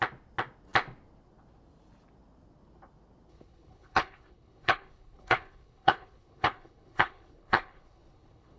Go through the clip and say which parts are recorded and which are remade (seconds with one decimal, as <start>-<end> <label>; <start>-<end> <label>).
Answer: 0.0-3.3 recorded; 3.3-8.6 remade